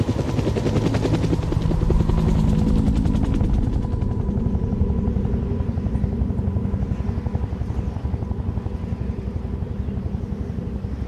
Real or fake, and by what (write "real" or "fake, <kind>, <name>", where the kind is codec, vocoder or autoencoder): real